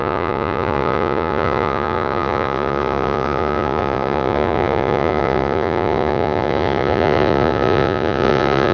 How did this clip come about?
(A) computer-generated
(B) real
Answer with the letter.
A